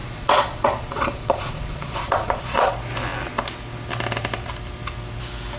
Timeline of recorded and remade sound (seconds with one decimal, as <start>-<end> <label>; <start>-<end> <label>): 0.0-2.7 remade; 2.7-5.6 recorded